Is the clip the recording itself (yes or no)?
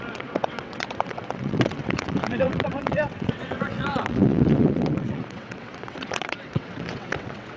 no